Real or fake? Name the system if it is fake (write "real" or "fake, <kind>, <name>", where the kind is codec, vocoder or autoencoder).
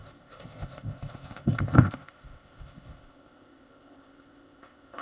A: fake, codec, ZipCodec